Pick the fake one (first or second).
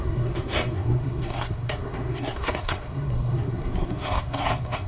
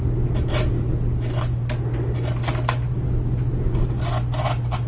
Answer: first